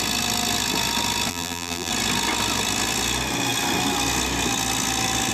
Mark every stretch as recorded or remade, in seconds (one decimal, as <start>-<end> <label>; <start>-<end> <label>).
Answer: 0.0-1.3 recorded; 1.3-1.9 remade; 1.9-5.3 recorded